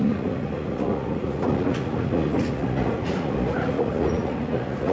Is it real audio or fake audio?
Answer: fake